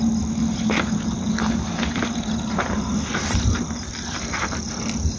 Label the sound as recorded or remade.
remade